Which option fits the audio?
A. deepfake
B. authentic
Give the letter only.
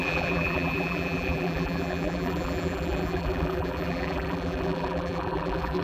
A